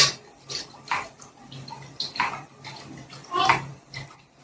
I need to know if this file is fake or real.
real